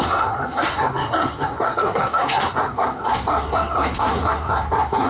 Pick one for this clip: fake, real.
fake